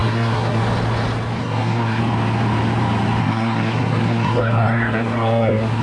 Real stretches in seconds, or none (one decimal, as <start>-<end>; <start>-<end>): 0.6-1.4; 2.0-3.2